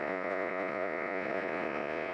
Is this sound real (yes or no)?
no